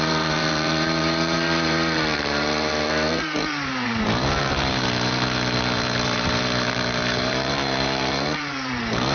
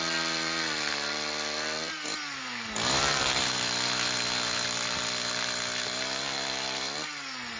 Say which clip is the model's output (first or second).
first